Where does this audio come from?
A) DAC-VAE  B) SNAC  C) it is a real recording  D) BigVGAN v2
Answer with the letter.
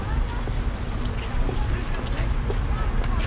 C